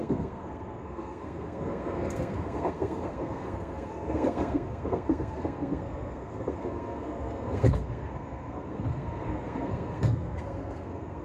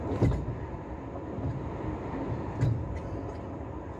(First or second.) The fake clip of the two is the first